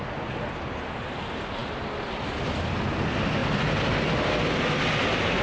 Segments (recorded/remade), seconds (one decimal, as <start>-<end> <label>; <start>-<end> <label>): 0.0-5.4 recorded